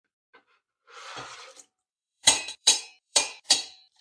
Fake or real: fake